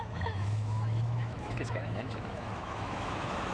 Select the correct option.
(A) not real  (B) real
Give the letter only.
A